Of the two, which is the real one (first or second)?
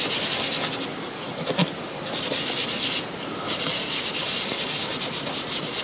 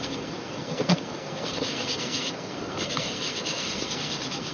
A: first